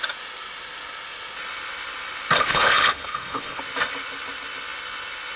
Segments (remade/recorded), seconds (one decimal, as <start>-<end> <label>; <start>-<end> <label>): 0.0-2.5 recorded; 2.5-3.6 remade; 3.6-5.4 recorded